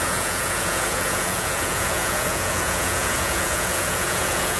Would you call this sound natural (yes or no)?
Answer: no